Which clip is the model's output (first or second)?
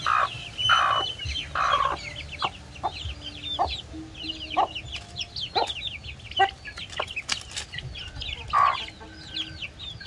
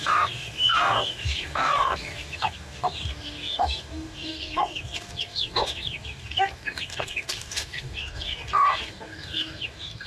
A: second